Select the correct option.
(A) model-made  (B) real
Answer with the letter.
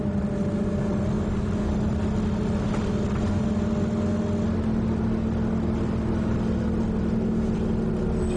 B